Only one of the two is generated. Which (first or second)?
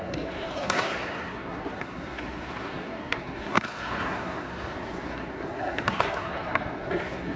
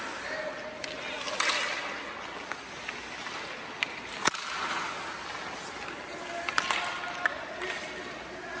first